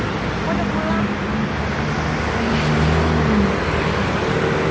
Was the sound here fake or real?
real